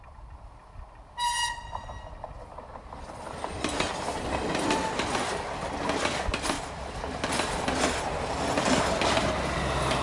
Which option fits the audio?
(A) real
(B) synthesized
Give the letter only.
A